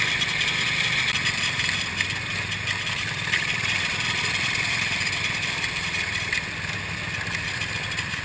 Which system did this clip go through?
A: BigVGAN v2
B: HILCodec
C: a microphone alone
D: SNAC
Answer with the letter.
A